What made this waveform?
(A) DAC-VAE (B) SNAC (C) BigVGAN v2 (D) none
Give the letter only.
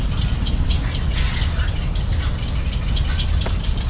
D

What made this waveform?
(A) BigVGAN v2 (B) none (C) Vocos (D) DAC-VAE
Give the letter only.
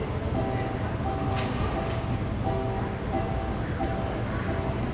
B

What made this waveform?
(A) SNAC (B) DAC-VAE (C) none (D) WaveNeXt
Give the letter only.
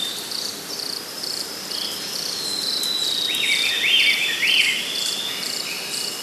C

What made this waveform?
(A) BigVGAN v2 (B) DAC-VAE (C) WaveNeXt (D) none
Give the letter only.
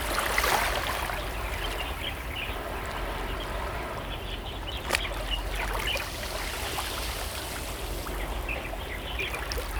D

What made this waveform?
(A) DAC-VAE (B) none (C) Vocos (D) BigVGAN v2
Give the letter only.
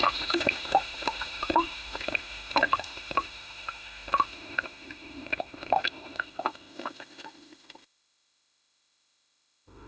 A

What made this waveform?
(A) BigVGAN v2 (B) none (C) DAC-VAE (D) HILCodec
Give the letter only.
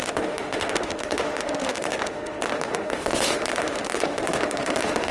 C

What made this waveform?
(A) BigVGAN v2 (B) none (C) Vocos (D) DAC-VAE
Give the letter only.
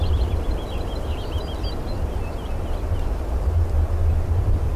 B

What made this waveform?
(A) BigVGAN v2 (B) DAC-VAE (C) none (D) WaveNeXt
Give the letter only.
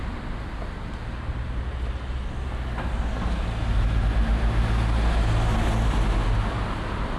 C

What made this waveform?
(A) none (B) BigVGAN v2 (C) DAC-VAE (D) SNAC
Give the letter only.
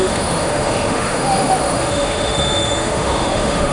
C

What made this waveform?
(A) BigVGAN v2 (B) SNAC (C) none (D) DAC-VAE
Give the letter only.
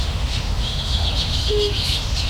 D